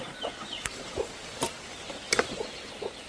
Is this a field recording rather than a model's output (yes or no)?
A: yes